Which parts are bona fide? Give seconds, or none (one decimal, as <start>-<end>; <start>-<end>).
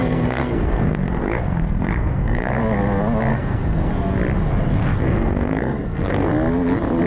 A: 2.6-3.3; 3.9-4.8; 6.3-7.1